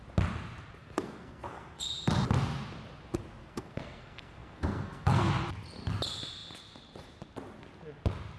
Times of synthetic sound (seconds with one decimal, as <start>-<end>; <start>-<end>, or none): 0.8-1.8; 3.4-5.3